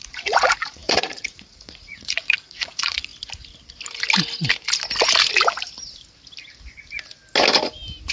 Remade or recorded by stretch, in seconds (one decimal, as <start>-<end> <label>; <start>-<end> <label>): 0.0-3.1 remade; 3.1-8.1 recorded